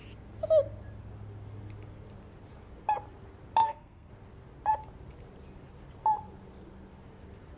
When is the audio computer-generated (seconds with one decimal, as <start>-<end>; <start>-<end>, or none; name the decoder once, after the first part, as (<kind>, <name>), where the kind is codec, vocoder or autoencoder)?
3.6-4.1 (codec, SNAC)